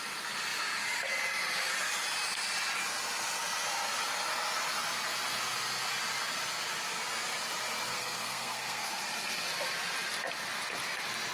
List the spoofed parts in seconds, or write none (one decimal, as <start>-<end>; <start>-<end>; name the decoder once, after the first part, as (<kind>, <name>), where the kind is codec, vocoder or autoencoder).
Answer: 7.9-9.0 (codec, SNAC)